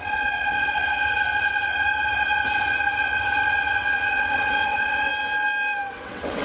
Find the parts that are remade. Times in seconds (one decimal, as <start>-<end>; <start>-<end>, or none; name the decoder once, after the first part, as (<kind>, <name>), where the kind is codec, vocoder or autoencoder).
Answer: 0.0-1.0 (vocoder, WaveNeXt); 4.1-5.1; 5.9-6.4

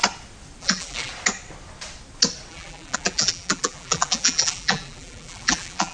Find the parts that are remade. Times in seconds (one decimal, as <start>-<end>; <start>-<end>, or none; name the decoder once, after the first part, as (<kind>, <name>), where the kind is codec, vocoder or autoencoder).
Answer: 0.6-1.1 (vocoder, BigVGAN v2); 2.5-5.9

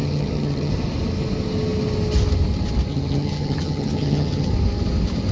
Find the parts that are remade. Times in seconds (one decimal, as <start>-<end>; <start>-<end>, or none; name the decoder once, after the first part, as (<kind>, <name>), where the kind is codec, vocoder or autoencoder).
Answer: 0.0-0.7 (vocoder, HiFi-GAN); 2.9-4.5

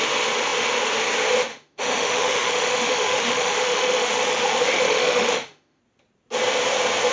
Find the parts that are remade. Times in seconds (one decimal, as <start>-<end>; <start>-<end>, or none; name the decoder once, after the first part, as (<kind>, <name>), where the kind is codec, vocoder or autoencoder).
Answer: 1.5-5.8 (autoencoder, DAC-VAE)

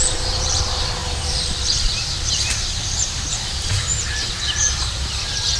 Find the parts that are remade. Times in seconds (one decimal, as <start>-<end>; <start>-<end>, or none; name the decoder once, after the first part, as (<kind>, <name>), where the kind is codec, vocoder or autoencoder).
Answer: 0.0-5.6 (vocoder, BigVGAN v2)

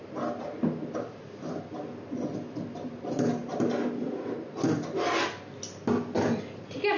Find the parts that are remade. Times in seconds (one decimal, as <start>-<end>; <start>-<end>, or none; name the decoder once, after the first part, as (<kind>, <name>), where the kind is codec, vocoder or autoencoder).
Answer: none

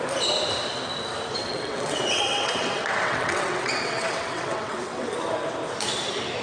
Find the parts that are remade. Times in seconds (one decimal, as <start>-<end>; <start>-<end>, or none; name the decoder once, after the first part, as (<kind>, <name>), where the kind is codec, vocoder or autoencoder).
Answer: 1.4-5.1 (vocoder, WaveNeXt)

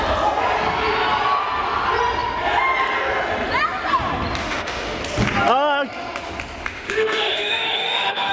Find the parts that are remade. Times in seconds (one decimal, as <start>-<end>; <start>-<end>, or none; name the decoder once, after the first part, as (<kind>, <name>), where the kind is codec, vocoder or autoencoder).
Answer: 4.4-5.0 (autoencoder, DAC-VAE); 6.6-8.3